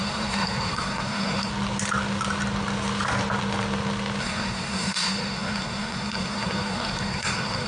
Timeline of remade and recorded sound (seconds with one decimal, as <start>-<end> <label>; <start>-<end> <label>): 0.0-1.5 remade; 1.5-4.2 recorded; 4.2-7.7 remade